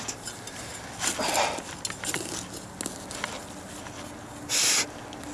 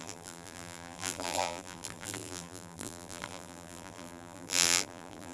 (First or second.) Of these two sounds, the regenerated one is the second